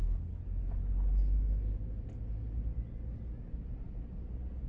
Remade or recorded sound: recorded